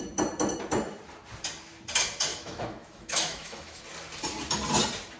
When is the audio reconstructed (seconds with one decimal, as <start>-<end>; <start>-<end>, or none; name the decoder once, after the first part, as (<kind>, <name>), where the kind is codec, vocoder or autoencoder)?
2.3-3.8 (autoencoder, DAC-VAE)